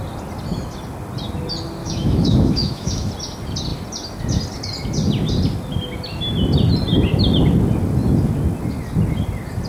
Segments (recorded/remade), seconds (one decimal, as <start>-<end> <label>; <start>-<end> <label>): 0.0-1.8 recorded; 1.8-3.1 remade; 3.1-9.7 recorded